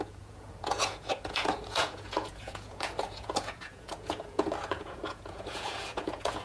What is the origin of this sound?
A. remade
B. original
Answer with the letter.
A